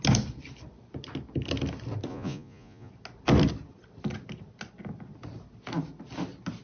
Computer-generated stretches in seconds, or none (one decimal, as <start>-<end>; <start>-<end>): 2.1-2.9